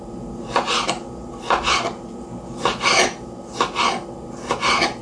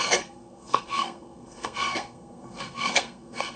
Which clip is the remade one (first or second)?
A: second